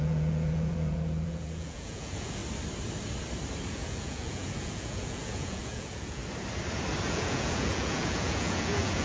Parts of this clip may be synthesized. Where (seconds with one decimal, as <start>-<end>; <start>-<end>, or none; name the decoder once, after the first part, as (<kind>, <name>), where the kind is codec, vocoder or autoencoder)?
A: 0.0-2.4 (vocoder, Vocos); 3.7-6.2; 7.0-9.0